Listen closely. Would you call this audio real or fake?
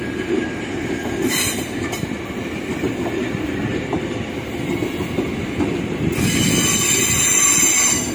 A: real